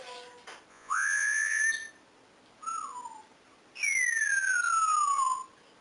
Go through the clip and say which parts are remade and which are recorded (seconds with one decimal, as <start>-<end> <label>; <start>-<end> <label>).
0.0-0.7 recorded; 0.7-1.6 remade; 1.6-5.8 recorded

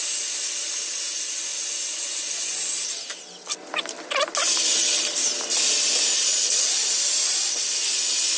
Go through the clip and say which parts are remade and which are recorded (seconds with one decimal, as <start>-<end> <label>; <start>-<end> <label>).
0.0-1.5 recorded; 1.5-2.6 remade; 2.6-8.4 recorded

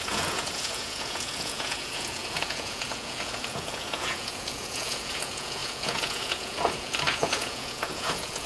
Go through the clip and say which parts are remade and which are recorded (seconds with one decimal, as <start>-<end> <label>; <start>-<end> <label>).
0.0-8.5 remade

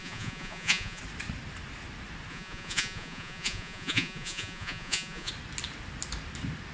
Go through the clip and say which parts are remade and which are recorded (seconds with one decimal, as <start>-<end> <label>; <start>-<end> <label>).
0.0-1.0 remade; 1.0-2.3 recorded; 2.3-5.3 remade; 5.3-6.7 recorded

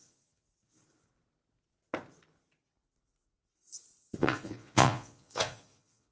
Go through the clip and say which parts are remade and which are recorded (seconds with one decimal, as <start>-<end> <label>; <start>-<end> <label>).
0.0-0.5 remade; 0.5-4.2 recorded; 4.2-6.1 remade